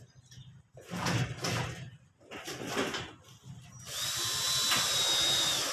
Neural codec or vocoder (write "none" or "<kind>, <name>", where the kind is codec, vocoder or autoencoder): none